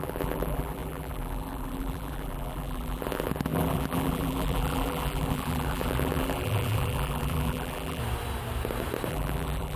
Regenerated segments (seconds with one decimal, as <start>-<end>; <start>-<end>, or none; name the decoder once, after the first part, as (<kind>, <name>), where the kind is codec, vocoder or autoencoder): 0.0-8.0 (vocoder, BigVGAN v2); 9.1-9.8